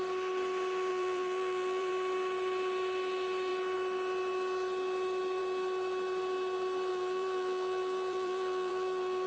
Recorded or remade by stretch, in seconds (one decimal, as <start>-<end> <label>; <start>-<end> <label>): 0.0-0.9 recorded; 0.9-1.9 remade; 1.9-6.9 recorded; 6.9-9.3 remade